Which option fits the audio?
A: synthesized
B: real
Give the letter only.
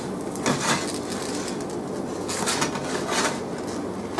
B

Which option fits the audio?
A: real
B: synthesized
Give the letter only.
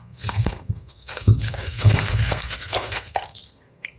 B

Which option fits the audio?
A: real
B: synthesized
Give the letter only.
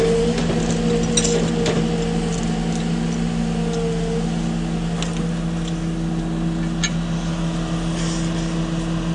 A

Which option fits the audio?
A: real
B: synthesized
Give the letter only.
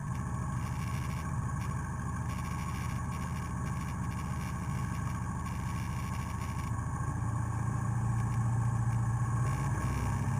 A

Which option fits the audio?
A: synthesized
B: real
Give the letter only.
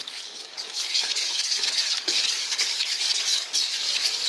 A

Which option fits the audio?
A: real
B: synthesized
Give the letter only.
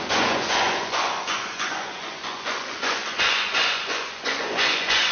B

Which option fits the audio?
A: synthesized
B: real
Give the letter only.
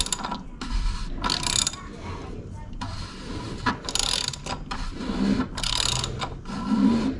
B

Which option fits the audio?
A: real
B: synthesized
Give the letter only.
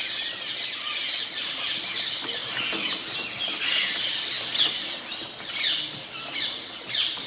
A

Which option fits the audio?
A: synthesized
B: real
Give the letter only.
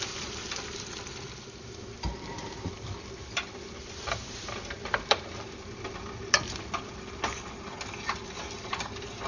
A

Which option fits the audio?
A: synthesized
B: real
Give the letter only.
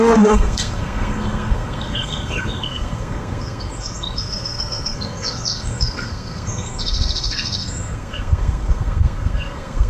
A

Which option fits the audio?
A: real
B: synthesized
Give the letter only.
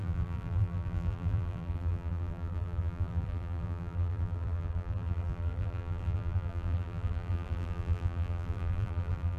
B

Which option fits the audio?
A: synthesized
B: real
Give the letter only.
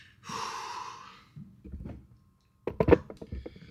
B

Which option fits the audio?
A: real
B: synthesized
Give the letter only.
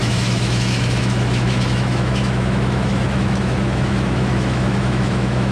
B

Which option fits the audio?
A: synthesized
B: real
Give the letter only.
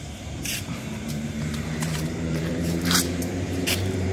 A